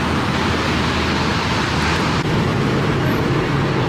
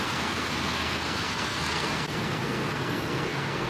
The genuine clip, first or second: first